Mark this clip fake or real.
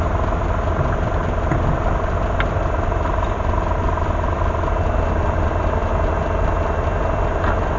real